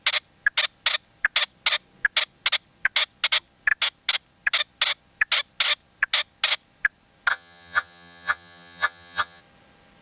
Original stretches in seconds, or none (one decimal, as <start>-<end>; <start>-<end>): 0.0-7.3; 9.4-10.0